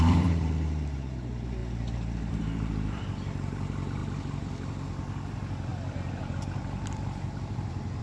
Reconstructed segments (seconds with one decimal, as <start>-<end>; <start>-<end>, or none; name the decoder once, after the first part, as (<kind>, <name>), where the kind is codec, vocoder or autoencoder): 0.0-1.6 (vocoder, BigVGAN v2); 2.3-4.0; 4.9-5.7; 6.2-8.0